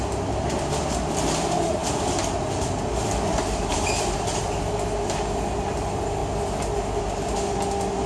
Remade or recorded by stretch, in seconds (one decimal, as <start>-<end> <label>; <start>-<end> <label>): 0.0-3.3 recorded; 3.3-4.4 remade; 4.4-8.1 recorded